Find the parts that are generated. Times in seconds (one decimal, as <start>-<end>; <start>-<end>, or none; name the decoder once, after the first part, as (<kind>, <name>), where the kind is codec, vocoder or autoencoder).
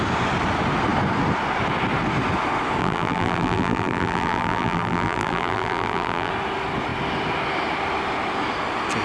2.8-6.3 (vocoder, BigVGAN v2)